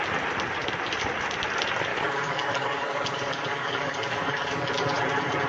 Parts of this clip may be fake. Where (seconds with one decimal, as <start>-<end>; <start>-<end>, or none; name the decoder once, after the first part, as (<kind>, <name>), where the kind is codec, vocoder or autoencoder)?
1.9-5.0 (codec, DAC)